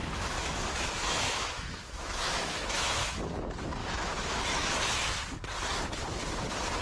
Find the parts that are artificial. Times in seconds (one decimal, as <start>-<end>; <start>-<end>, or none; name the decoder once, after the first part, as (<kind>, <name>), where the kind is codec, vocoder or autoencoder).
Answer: 0.0-3.2 (autoencoder, DAC-VAE); 3.8-4.8